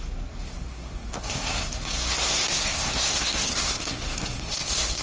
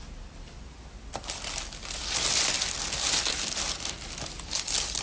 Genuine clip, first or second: second